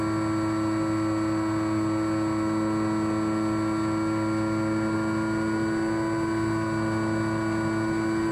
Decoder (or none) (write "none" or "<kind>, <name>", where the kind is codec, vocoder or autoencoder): none